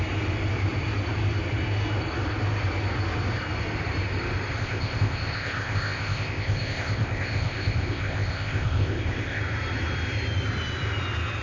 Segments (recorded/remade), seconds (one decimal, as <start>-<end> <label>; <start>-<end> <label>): 0.0-4.6 recorded; 4.6-9.4 remade; 9.4-11.4 recorded